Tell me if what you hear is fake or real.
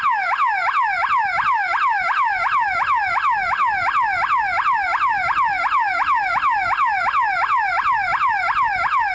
real